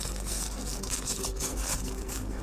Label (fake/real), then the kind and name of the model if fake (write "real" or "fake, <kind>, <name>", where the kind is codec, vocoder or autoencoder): fake, codec, SNAC